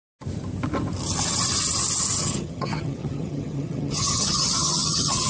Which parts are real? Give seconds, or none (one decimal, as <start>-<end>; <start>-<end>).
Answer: 0.0-2.2